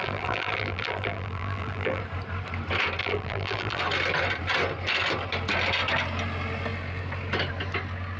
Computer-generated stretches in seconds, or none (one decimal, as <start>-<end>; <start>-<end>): 0.0-2.0; 3.0-3.8